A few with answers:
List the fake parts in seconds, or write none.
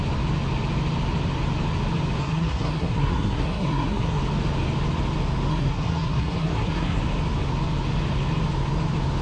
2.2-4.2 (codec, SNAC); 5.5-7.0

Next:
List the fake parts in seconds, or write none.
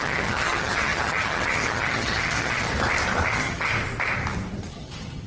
0.0-2.7 (vocoder, HiFi-GAN); 3.3-3.7; 4.7-5.3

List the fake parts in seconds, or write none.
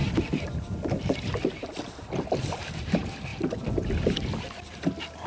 none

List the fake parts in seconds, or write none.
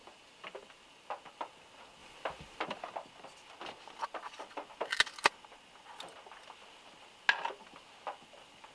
none